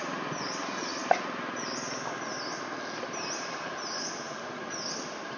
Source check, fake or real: real